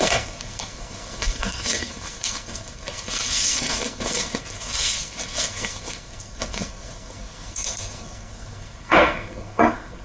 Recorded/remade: remade